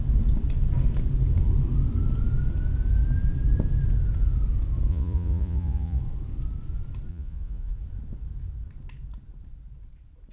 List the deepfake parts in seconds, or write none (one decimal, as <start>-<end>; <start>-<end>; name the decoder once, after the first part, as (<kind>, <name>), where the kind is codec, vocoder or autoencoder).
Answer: 4.9-6.0 (vocoder, Vocos); 7.1-7.8